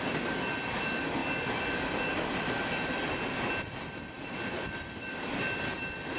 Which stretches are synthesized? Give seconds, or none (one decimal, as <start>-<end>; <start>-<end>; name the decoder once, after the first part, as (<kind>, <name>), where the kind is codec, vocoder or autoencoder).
none